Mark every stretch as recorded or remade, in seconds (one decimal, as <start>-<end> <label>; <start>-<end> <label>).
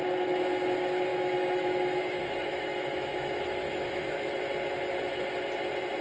0.0-1.1 recorded; 1.1-4.3 remade; 4.3-6.0 recorded